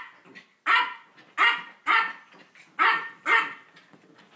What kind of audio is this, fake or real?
real